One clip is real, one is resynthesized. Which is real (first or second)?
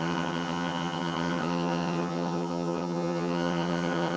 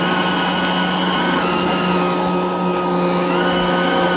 second